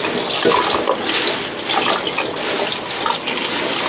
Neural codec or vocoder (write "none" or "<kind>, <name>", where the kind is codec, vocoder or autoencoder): none